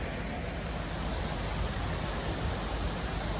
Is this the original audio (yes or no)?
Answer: yes